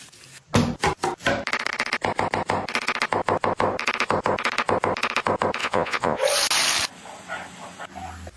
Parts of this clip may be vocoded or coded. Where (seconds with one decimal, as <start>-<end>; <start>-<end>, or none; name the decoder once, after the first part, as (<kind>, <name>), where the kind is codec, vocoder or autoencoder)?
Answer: 5.6-6.2 (vocoder, Vocos)